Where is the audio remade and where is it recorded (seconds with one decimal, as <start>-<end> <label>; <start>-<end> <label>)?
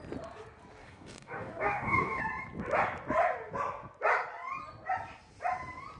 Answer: 0.0-0.8 recorded; 0.8-2.2 remade; 2.2-6.0 recorded